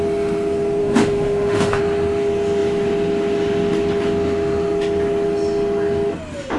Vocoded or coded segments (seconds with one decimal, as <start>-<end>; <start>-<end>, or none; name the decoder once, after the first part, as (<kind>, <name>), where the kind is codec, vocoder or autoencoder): 0.8-1.8 (autoencoder, DAC-VAE)